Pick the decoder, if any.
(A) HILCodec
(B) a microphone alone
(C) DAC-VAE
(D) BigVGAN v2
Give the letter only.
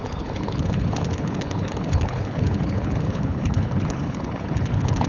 A